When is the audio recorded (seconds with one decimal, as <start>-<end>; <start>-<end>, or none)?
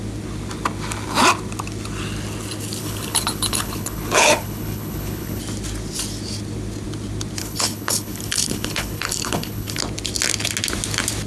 0.0-2.8; 5.4-7.4; 9.8-11.3